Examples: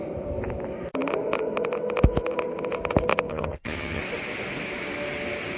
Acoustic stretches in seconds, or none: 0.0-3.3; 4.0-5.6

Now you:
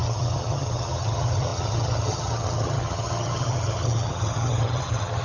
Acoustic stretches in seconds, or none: none

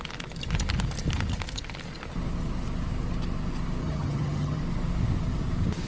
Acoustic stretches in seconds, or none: 0.0-3.8; 4.6-5.9

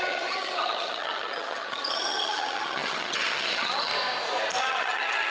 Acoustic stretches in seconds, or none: 3.9-4.6

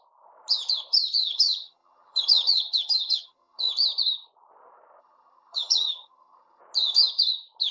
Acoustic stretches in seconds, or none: 0.0-1.2; 3.7-5.0; 6.6-7.7

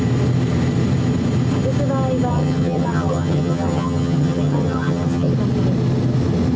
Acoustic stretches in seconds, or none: 0.0-2.3; 5.3-6.6

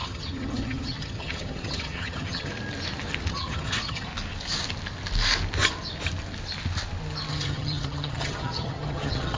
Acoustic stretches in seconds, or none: 2.5-3.3; 4.1-7.3

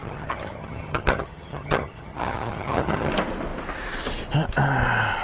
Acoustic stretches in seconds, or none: 3.1-5.2